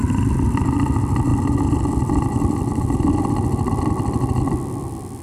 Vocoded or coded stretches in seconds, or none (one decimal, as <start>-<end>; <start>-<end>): 1.3-4.4